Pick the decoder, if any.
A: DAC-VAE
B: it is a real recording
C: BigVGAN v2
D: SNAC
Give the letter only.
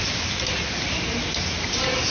B